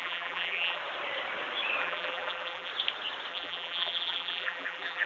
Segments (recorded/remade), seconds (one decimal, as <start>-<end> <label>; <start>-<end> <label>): 0.0-0.8 remade; 0.8-1.8 recorded; 1.8-2.7 remade; 2.7-3.3 recorded; 3.3-5.1 remade